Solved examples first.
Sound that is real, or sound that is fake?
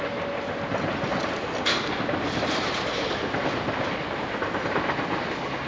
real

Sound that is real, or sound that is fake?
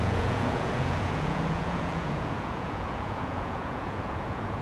fake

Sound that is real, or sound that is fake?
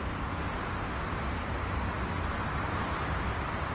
real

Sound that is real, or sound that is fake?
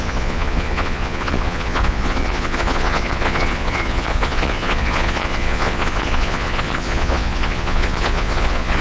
fake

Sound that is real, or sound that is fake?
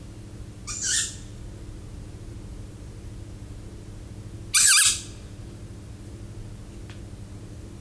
real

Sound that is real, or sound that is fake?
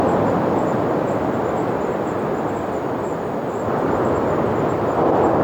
real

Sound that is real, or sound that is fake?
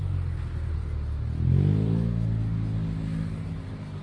real